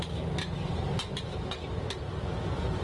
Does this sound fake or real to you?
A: real